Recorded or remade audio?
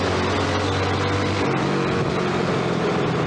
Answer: recorded